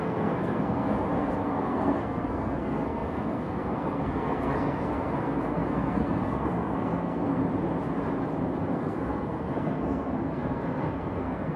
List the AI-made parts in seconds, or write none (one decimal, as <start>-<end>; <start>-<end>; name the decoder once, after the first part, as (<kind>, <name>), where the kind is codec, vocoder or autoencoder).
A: 0.0-7.4 (codec, SNAC); 8.6-11.6